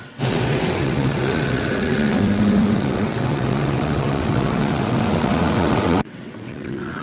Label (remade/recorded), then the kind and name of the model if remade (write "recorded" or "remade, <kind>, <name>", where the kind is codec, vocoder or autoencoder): remade, vocoder, WaveNeXt